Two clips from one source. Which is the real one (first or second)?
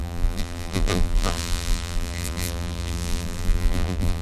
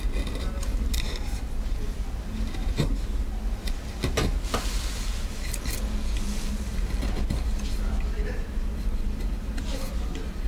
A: second